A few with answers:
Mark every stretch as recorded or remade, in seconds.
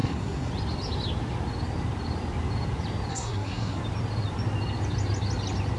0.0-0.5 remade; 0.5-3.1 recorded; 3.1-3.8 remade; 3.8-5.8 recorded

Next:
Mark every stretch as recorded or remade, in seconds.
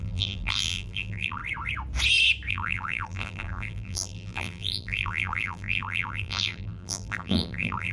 0.0-1.4 remade; 1.4-2.5 recorded; 2.5-7.9 remade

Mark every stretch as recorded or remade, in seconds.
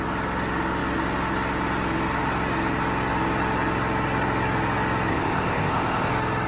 0.0-5.1 recorded; 5.1-6.1 remade; 6.1-6.5 recorded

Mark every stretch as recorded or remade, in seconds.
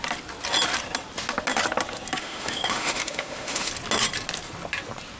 0.0-2.2 recorded; 2.2-3.7 remade; 3.7-5.2 recorded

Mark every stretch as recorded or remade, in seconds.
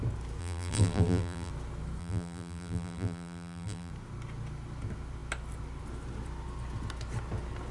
0.0-0.4 recorded; 0.4-1.5 remade; 1.5-2.0 recorded; 2.0-3.9 remade; 3.9-7.7 recorded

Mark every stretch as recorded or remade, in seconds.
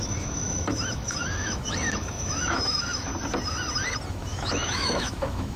0.0-3.1 remade; 3.1-4.1 recorded; 4.1-5.6 remade